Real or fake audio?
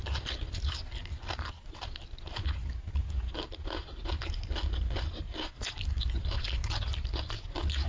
real